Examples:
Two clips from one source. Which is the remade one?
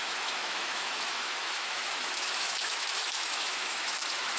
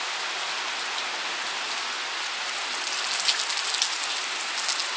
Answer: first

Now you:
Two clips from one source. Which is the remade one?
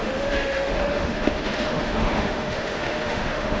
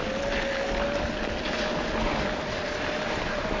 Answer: first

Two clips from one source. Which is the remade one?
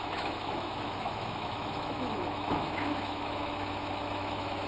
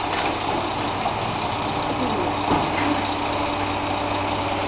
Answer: first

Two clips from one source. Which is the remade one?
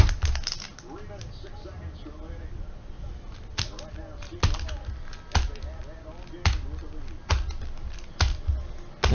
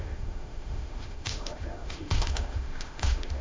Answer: second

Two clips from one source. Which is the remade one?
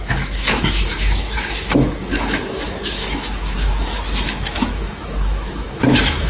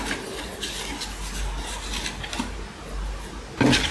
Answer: first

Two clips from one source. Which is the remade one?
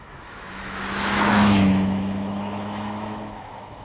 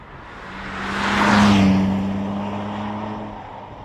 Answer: first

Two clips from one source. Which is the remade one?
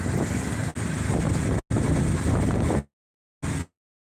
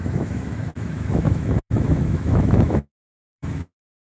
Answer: second